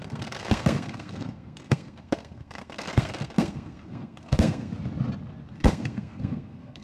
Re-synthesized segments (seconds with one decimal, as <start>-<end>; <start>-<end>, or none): 0.0-4.7; 5.7-6.8